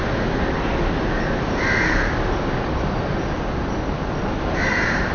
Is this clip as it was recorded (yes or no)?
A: yes